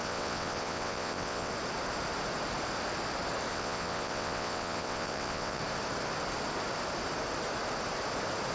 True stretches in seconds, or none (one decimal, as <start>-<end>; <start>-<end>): 1.5-3.5; 5.6-8.5